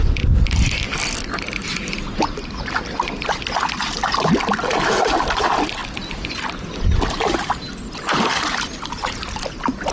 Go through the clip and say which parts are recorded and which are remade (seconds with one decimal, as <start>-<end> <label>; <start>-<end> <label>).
0.0-4.0 recorded; 4.0-5.2 remade; 5.2-9.9 recorded